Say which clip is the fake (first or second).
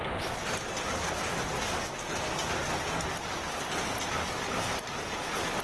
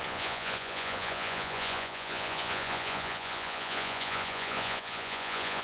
second